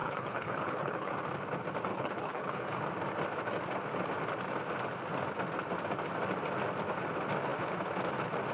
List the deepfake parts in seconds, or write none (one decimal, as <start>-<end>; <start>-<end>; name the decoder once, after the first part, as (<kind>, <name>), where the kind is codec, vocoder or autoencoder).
0.0-1.1 (codec, HILCodec); 1.9-2.8